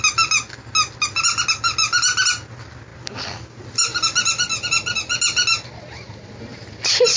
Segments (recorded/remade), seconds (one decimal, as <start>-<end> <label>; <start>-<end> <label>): 0.0-7.2 recorded